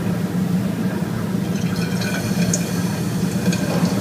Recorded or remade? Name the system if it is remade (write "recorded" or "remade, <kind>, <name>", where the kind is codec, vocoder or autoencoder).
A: recorded